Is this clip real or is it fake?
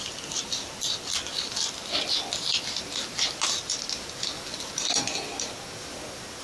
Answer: real